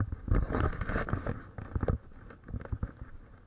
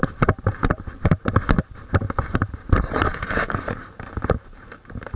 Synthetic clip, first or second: second